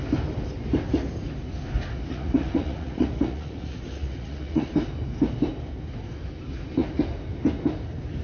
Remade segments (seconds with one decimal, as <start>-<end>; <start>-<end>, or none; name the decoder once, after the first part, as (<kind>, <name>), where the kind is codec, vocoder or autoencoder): 2.1-4.7 (vocoder, Vocos)